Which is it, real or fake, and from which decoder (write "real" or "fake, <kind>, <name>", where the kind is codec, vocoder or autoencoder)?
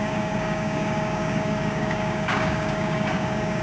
fake, codec, DAC